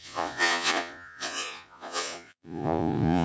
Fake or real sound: fake